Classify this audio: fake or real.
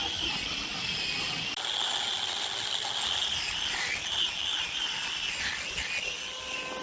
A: real